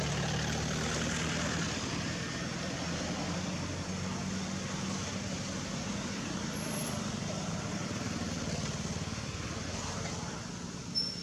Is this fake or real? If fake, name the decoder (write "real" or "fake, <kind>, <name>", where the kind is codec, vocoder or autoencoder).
real